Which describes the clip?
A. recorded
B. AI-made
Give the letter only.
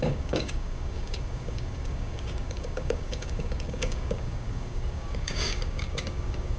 B